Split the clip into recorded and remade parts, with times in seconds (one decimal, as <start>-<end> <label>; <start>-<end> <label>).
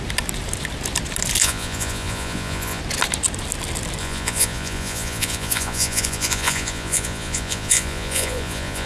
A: 0.0-1.4 recorded; 1.4-2.8 remade; 2.8-4.0 recorded; 4.0-8.9 remade